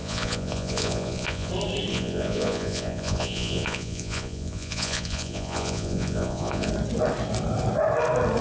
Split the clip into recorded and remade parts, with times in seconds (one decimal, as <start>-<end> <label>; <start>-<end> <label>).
0.0-1.5 remade; 1.5-1.9 recorded; 1.9-6.7 remade; 6.7-8.4 recorded